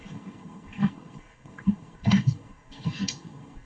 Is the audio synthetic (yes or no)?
yes